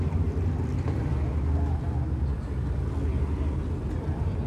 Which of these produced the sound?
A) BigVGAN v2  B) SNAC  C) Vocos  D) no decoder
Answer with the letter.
D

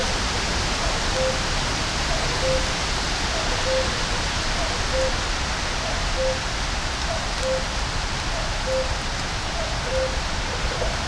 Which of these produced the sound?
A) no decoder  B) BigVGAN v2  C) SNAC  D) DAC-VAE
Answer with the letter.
A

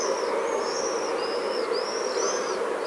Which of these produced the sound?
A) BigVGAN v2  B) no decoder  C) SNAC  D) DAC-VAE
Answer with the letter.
B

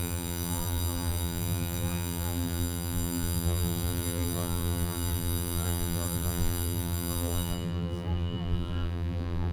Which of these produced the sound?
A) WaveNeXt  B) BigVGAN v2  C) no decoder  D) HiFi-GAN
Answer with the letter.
B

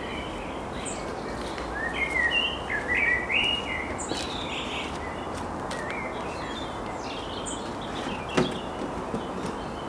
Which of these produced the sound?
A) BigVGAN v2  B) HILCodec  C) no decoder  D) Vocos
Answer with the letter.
C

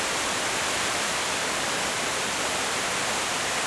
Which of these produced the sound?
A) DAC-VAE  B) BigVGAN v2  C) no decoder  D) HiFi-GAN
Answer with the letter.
C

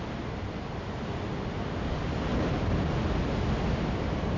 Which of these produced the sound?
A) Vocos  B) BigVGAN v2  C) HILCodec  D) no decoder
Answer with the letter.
D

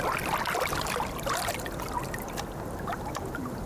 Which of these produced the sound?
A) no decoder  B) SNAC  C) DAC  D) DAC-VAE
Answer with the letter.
A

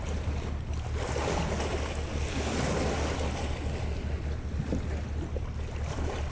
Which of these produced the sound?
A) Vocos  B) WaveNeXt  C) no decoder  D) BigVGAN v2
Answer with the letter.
C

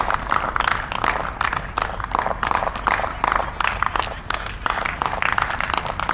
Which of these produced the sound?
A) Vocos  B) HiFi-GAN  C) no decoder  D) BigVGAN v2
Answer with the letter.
C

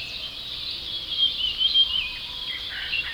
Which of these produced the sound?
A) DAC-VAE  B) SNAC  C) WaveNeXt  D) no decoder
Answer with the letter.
D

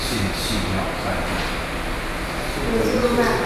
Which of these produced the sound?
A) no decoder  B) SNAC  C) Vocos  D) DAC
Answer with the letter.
A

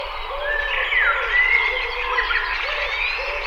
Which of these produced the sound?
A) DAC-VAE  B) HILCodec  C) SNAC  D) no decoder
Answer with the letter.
D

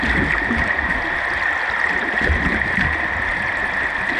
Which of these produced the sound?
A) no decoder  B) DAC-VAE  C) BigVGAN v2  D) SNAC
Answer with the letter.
A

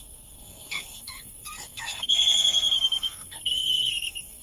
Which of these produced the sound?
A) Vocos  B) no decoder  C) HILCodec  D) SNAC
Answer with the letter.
D